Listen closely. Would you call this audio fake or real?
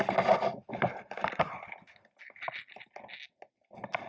real